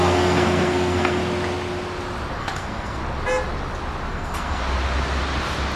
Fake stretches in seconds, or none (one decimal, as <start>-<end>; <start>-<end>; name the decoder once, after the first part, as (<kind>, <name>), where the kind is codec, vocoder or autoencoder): 0.0-1.2 (codec, SNAC); 2.4-3.0; 4.1-4.6